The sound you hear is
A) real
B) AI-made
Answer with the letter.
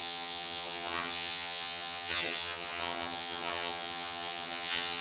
B